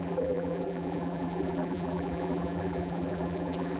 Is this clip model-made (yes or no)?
yes